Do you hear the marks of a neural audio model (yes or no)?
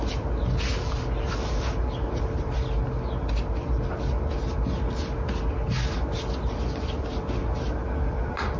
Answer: no